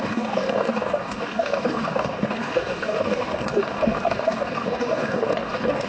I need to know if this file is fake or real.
fake